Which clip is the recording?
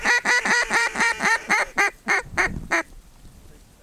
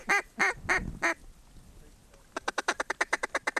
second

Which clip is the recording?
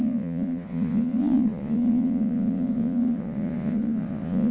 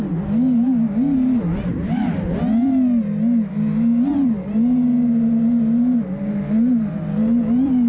second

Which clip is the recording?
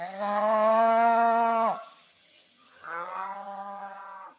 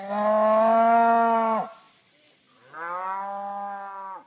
second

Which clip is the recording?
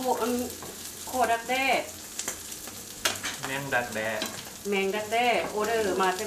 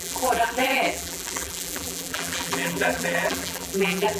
first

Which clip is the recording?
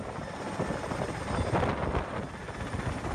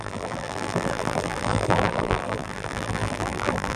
first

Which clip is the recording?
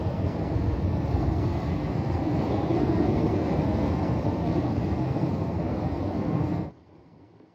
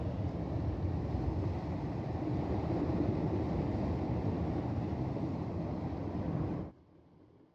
second